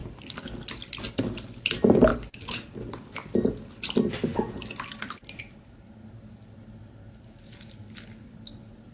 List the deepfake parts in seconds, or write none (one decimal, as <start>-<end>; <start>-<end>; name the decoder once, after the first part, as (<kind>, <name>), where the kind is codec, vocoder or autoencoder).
2.1-2.9 (codec, DAC)